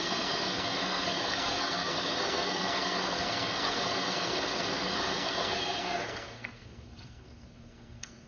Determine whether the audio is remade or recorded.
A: remade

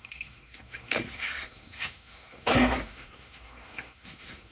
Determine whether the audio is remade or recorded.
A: remade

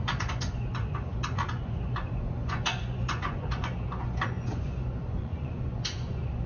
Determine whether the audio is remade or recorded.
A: remade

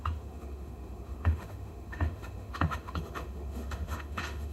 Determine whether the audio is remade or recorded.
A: remade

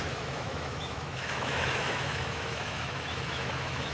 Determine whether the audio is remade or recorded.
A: remade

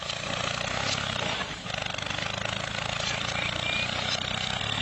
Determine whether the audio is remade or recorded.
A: recorded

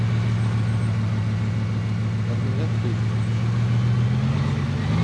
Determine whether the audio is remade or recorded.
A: recorded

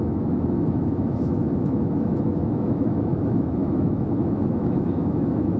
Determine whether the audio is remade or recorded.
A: remade